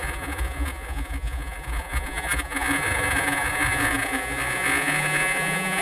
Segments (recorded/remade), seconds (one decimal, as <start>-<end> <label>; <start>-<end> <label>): 0.0-5.8 remade